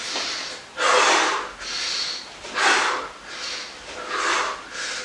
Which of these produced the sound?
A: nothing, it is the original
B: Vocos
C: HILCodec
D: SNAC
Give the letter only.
A